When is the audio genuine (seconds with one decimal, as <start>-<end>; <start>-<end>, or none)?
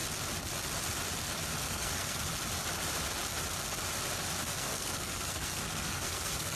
0.0-1.6; 2.3-4.4